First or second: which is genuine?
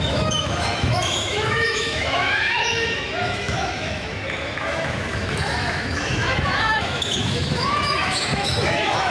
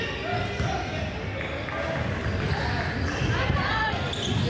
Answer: second